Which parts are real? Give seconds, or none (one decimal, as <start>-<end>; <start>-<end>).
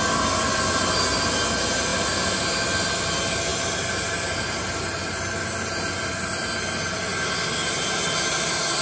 0.0-8.8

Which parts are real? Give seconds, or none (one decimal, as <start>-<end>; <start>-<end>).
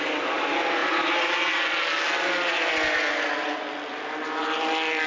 0.0-5.1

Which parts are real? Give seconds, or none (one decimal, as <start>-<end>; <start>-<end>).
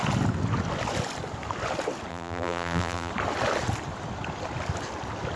0.0-2.1; 3.1-5.4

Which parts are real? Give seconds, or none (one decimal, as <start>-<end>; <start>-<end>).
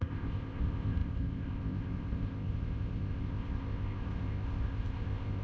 none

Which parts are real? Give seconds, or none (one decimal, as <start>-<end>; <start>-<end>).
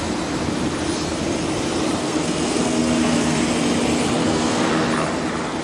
0.0-2.0; 3.4-4.2; 4.7-5.6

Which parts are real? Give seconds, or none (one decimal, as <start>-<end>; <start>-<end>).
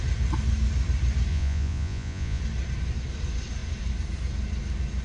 0.0-1.3; 2.4-5.0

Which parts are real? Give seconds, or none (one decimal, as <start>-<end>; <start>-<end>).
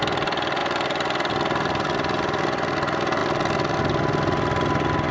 0.0-5.1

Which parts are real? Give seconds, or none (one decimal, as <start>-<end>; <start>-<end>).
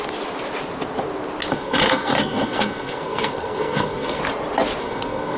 0.0-1.5; 4.2-4.8